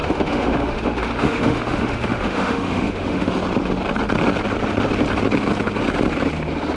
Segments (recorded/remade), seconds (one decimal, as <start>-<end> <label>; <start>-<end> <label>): 0.0-3.3 remade; 3.3-6.8 recorded

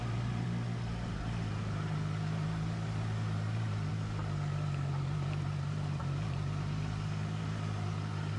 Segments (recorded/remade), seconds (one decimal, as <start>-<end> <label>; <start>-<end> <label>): 0.0-8.4 recorded

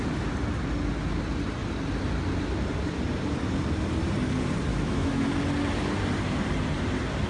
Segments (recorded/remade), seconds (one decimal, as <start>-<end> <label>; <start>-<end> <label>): 0.0-4.7 recorded; 4.7-5.2 remade; 5.2-7.3 recorded

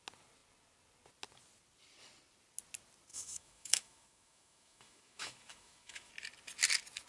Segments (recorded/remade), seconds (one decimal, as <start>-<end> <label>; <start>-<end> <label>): 0.0-3.1 recorded; 3.1-6.1 remade; 6.1-7.1 recorded

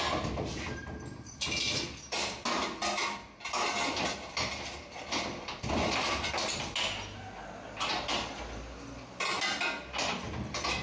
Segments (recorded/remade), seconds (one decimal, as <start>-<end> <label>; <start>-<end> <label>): 0.0-10.8 recorded

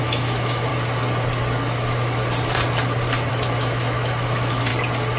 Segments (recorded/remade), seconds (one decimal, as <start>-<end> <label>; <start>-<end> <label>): 0.0-0.7 remade; 0.7-3.3 recorded; 3.3-4.7 remade; 4.7-5.2 recorded

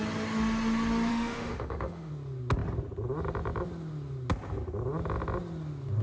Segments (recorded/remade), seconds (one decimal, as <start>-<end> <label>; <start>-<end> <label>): 0.0-1.1 recorded; 1.1-2.1 remade; 2.1-6.0 recorded

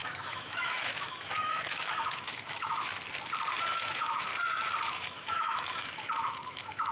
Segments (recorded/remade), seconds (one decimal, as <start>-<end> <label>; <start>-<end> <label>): 0.0-2.9 remade; 2.9-3.7 recorded; 3.7-4.3 remade; 4.3-4.9 recorded; 4.9-6.9 remade